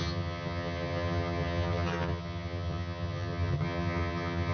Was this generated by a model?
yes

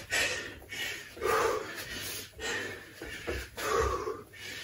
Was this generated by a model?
no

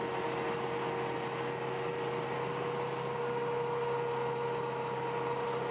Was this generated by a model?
no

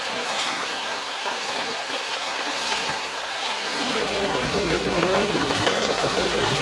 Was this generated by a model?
yes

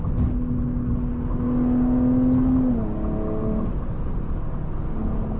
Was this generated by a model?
no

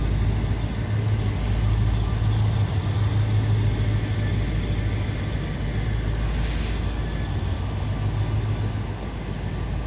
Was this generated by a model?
no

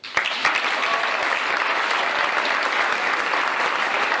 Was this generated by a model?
no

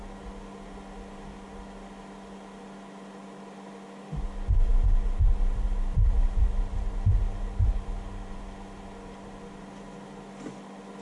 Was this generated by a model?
no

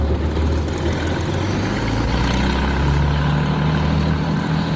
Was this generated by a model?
no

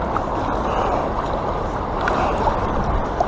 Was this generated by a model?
no